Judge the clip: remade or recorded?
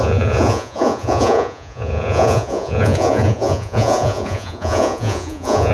remade